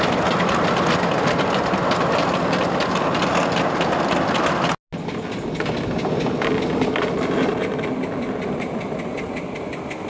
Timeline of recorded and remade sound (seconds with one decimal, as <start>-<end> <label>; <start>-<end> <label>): 0.0-10.1 recorded

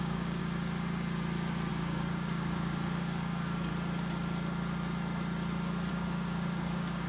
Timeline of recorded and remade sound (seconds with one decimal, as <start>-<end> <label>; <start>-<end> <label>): 0.0-0.4 remade; 0.4-1.7 recorded; 1.7-3.7 remade; 3.7-5.9 recorded; 5.9-7.1 remade

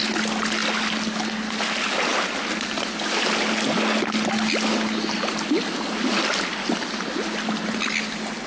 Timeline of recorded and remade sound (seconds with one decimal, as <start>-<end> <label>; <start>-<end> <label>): 0.0-8.5 recorded

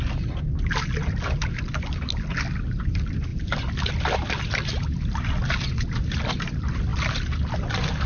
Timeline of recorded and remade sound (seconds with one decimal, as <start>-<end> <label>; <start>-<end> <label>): 0.0-8.1 recorded

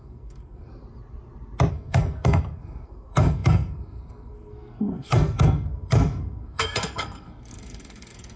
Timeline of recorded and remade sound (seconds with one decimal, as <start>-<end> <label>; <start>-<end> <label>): 0.0-0.7 remade; 0.7-1.7 recorded; 1.7-8.4 remade

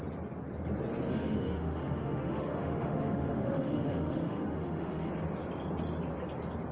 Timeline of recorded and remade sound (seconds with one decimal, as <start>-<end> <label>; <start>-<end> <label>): 0.0-1.1 recorded; 1.1-5.1 remade; 5.1-6.7 recorded

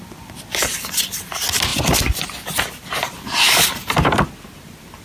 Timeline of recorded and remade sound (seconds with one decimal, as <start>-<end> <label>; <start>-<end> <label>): 0.0-5.0 recorded

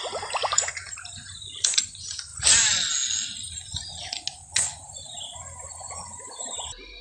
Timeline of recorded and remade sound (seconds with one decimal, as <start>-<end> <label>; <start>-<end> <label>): 0.0-2.3 remade; 2.3-5.8 recorded; 5.8-7.0 remade